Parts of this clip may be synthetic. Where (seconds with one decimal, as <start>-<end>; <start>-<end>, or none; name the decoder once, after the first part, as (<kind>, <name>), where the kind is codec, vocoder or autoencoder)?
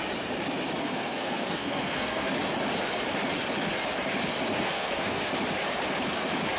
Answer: 0.8-2.3 (codec, SNAC); 4.5-5.3